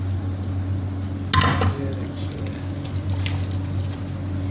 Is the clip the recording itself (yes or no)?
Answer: yes